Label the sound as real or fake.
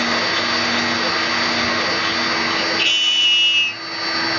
real